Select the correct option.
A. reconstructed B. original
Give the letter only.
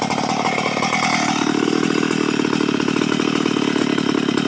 B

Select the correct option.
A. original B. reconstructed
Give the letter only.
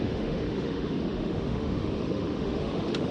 B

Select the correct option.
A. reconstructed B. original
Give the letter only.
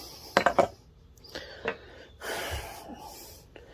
B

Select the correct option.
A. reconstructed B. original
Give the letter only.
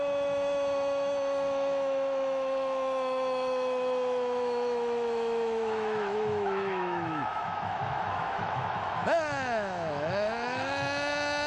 A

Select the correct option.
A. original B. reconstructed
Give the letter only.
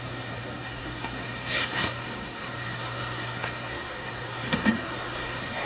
B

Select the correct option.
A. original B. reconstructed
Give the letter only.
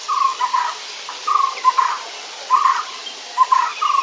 A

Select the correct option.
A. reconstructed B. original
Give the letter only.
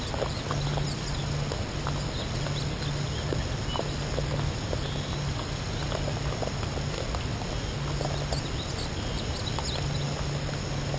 B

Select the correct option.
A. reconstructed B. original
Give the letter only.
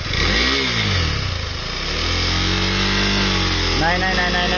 B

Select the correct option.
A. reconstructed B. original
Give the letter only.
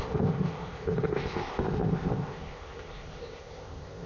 A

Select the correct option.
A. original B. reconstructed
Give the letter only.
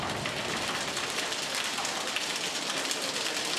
A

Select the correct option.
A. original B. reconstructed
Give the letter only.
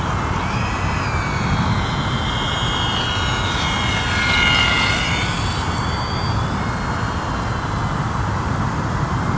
A